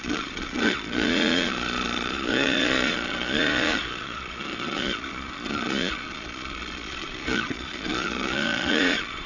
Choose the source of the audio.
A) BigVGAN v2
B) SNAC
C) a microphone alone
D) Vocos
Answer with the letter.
D